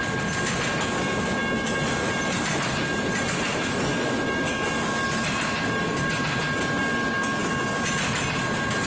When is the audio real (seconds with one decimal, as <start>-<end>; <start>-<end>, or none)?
0.0-3.5; 4.7-8.9